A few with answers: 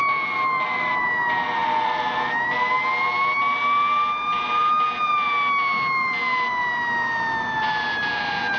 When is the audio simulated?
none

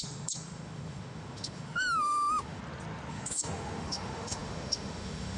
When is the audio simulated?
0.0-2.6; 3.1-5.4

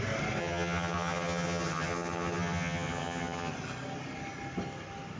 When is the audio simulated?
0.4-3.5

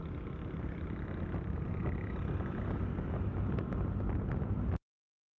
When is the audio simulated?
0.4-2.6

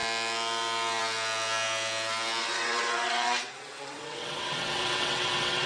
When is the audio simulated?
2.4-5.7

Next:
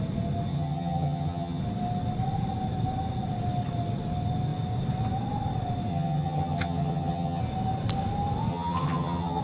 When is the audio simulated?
0.5-1.6; 5.9-7.4; 8.5-9.4

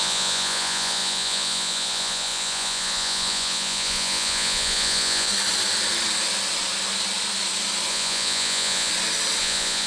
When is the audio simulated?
0.0-5.3; 7.9-8.9; 9.4-9.9